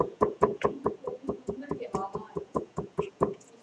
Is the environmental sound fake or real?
fake